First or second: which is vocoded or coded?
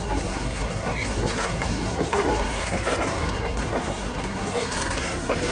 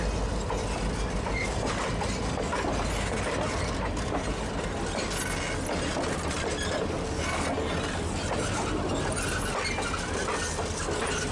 first